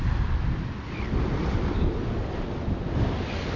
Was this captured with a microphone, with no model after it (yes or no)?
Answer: yes